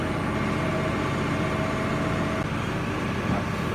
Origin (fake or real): real